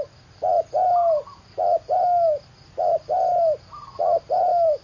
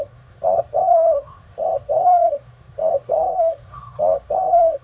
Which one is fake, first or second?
second